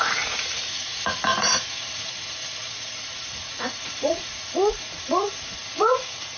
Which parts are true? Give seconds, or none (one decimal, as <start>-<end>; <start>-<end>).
none